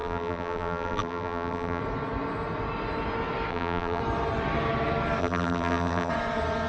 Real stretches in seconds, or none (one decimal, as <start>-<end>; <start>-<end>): 1.8-3.5; 4.0-5.2; 6.1-6.7